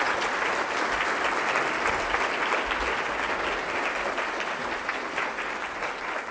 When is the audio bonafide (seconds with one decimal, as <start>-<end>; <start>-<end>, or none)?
0.0-4.6; 5.6-6.3